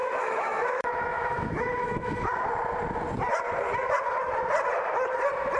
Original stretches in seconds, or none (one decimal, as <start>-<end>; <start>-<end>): 2.3-5.6